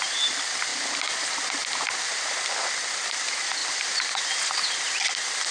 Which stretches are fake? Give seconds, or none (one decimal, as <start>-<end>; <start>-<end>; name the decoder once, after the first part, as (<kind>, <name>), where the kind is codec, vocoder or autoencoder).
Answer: 0.0-0.7 (vocoder, BigVGAN v2); 1.2-1.6; 2.2-5.5